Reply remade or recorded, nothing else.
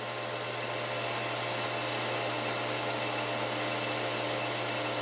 recorded